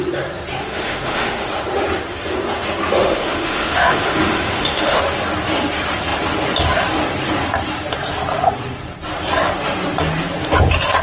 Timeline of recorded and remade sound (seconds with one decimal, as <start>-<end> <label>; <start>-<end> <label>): 0.0-0.6 recorded; 0.6-1.5 remade; 1.5-3.0 recorded; 3.0-5.0 remade; 5.0-11.0 recorded